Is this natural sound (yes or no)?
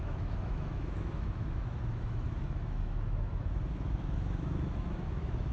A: no